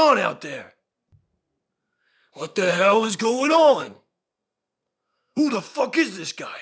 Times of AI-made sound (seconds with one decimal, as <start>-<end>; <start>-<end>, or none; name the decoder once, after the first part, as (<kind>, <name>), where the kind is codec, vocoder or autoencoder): 1.8-5.8 (codec, SNAC)